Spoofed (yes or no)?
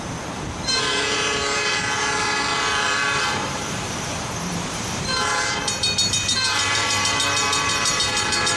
yes